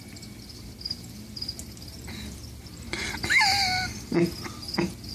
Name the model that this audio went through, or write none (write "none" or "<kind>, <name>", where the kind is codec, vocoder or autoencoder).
none